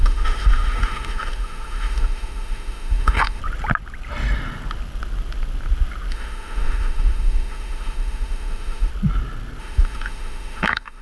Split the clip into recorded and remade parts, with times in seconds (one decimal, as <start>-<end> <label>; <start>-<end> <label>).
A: 0.0-3.4 remade; 3.4-6.1 recorded; 6.1-8.9 remade; 8.9-9.6 recorded; 9.6-11.0 remade